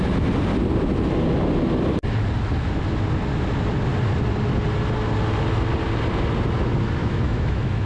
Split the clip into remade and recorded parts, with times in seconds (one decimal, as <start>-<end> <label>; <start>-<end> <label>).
0.0-7.0 recorded; 7.0-7.9 remade